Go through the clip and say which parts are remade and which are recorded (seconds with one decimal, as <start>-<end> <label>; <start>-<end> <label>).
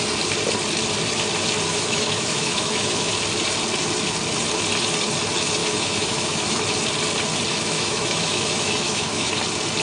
0.0-1.7 recorded; 1.7-3.1 remade; 3.1-5.6 recorded; 5.6-6.6 remade; 6.6-7.5 recorded; 7.5-9.3 remade; 9.3-9.8 recorded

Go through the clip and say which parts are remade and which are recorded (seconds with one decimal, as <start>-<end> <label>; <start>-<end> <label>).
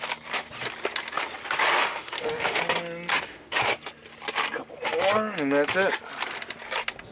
0.0-1.8 recorded; 1.8-2.6 remade; 2.6-3.1 recorded; 3.1-3.6 remade; 3.6-7.1 recorded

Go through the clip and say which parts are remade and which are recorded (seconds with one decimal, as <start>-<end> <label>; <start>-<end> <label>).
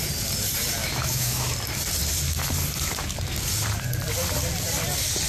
0.0-0.8 recorded; 0.8-1.5 remade; 1.5-5.3 recorded